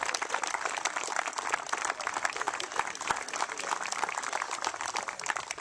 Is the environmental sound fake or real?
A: fake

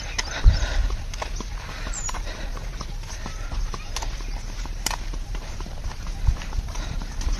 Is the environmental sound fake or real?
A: fake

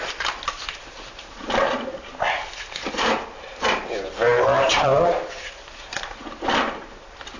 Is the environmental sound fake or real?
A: fake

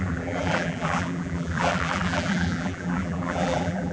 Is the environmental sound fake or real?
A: fake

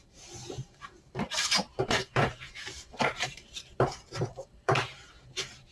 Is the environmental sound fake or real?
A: fake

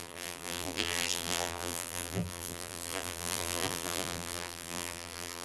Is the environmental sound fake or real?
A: fake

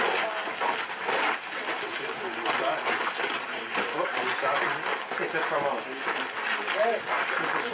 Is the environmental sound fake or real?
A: real